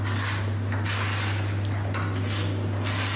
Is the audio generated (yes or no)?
no